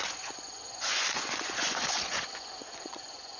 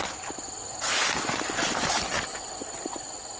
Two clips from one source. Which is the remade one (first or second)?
first